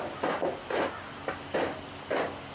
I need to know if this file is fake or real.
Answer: real